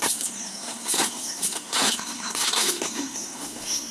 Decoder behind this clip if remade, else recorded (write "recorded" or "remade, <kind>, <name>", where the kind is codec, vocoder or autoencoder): remade, codec, SNAC